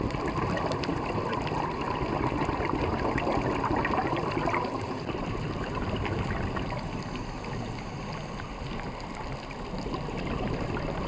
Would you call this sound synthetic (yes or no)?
no